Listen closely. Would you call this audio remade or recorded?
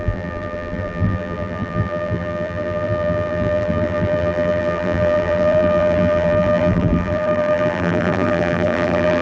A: remade